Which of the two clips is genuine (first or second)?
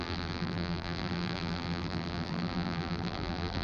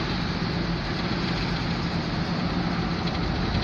second